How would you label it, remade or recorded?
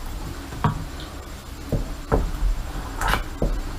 recorded